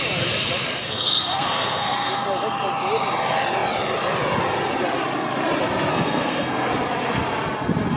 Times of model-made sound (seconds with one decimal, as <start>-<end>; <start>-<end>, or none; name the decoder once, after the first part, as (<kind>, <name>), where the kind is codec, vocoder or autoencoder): 0.8-2.1 (codec, SNAC); 5.9-6.7